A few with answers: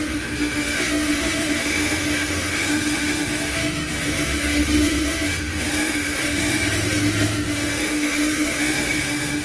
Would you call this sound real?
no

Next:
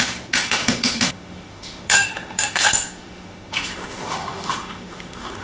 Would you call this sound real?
no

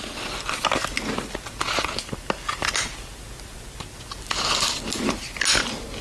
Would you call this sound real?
yes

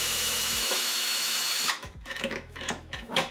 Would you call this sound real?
no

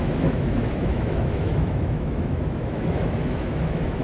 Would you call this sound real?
no